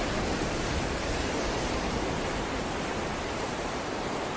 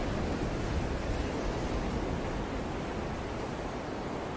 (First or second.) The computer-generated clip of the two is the first